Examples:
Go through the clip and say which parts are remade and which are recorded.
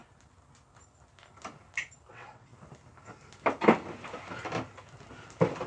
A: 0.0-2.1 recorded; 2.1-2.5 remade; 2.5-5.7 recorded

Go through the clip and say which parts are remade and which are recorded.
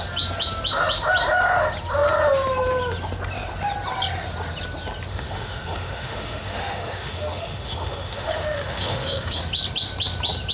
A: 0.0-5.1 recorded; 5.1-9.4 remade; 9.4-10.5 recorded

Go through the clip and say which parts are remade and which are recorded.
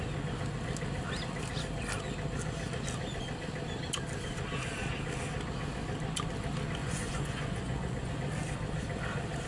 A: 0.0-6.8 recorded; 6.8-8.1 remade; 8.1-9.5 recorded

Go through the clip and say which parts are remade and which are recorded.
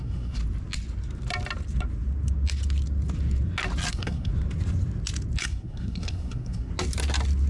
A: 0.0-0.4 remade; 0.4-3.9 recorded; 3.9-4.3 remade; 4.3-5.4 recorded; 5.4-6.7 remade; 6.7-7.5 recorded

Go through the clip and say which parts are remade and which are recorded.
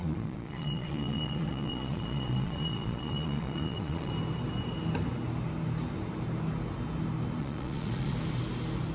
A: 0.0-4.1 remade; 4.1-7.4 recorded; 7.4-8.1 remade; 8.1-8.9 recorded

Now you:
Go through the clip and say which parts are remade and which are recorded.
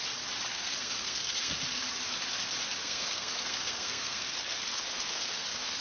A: 0.0-0.5 recorded; 0.5-1.5 remade; 1.5-2.8 recorded; 2.8-5.8 remade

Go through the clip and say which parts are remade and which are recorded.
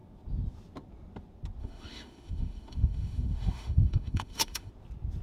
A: 0.0-1.6 recorded; 1.6-4.7 remade; 4.7-5.2 recorded